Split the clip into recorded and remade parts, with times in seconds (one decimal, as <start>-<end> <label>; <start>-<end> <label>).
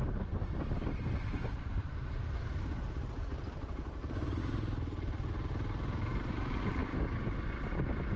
0.0-4.4 remade; 4.4-8.2 recorded